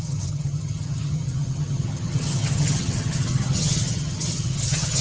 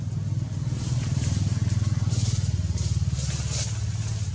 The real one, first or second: second